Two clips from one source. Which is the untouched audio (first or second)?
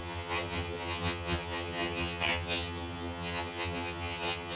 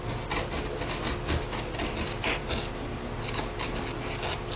second